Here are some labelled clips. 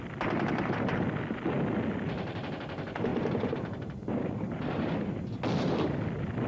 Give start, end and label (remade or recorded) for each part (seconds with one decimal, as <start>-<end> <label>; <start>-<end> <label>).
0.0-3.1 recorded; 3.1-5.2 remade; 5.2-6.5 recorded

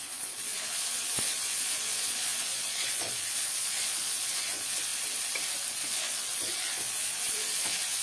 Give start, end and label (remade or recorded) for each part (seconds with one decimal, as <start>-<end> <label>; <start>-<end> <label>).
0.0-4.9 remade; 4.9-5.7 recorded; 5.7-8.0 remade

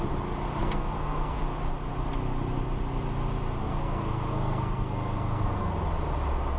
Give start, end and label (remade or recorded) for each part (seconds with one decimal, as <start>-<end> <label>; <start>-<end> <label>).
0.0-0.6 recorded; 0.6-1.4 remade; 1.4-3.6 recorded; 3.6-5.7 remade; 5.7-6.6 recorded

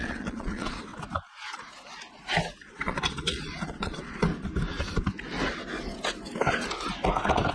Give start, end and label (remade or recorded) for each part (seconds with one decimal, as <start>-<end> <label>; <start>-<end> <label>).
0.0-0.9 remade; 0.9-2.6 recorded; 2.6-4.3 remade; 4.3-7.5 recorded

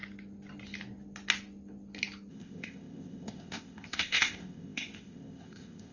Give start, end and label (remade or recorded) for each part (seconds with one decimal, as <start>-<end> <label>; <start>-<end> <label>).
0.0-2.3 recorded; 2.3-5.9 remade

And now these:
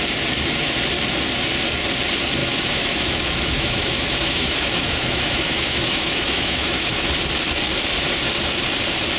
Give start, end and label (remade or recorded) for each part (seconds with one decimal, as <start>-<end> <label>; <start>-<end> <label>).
0.0-2.4 recorded; 2.4-7.1 remade; 7.1-9.2 recorded

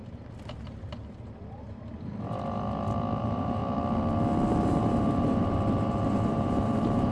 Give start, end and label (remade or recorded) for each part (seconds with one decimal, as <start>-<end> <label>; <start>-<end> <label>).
0.0-3.2 recorded; 3.2-3.6 remade; 3.6-4.5 recorded; 4.5-7.1 remade